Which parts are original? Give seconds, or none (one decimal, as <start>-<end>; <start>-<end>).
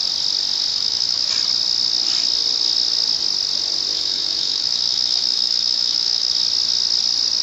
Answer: 0.0-0.7; 1.3-3.9; 6.3-7.4